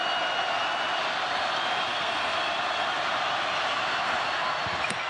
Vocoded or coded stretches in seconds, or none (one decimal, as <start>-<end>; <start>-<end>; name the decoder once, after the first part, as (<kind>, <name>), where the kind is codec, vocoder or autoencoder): 1.9-2.4 (codec, SNAC)